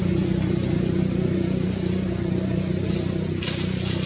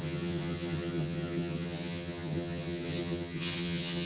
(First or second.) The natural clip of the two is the first